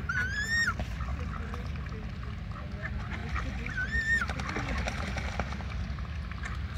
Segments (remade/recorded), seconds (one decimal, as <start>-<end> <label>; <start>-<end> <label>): 0.0-6.8 recorded